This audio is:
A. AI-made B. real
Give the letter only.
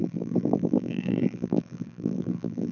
A